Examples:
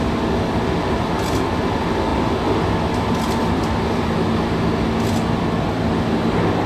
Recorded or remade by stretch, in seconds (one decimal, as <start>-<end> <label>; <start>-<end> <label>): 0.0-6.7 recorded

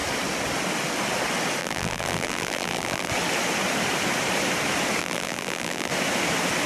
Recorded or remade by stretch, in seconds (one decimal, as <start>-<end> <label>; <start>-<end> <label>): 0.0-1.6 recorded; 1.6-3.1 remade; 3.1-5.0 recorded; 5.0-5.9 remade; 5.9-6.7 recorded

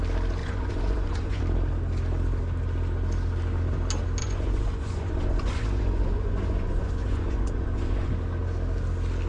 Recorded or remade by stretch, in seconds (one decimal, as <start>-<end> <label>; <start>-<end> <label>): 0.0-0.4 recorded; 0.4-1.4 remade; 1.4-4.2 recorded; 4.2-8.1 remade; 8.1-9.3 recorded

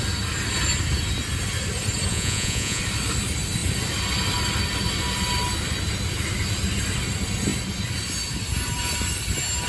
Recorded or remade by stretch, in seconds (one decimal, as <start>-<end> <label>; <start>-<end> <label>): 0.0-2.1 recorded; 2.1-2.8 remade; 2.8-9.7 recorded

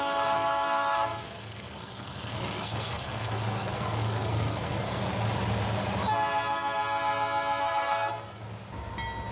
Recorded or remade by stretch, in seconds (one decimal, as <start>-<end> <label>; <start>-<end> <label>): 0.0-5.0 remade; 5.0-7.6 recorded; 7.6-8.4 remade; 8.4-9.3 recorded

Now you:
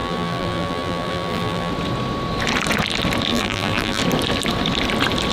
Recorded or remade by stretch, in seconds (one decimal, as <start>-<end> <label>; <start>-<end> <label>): 0.0-1.7 remade; 1.7-3.3 recorded; 3.3-4.0 remade; 4.0-5.3 recorded

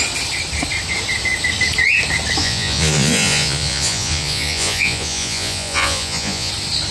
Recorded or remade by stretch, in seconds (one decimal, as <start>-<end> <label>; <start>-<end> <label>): 0.0-2.4 recorded; 2.4-6.5 remade; 6.5-6.9 recorded

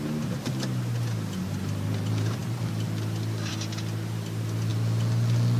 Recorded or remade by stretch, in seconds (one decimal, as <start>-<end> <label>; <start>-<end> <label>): 0.0-5.6 recorded